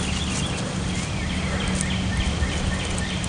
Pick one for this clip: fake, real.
real